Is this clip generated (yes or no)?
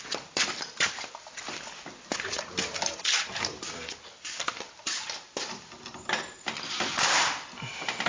yes